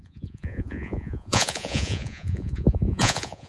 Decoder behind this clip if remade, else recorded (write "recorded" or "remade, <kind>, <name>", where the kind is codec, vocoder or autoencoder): remade, vocoder, Vocos